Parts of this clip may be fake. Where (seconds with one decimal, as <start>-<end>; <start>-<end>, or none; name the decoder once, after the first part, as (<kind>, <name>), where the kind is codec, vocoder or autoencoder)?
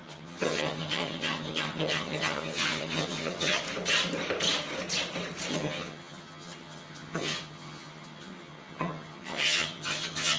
0.0-3.6 (vocoder, HiFi-GAN); 5.5-10.4